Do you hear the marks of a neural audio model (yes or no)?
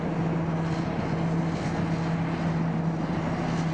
no